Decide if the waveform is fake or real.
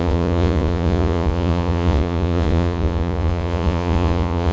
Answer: fake